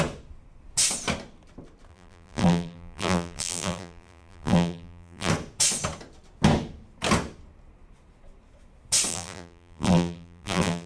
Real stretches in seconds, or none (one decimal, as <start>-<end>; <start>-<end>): 0.0-1.9; 5.3-9.1